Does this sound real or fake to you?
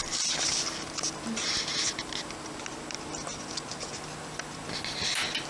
real